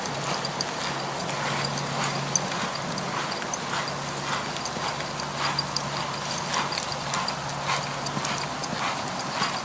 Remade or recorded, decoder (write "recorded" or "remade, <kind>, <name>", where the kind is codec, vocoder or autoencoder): recorded